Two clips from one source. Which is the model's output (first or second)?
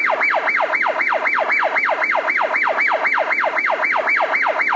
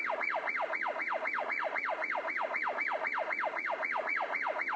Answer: second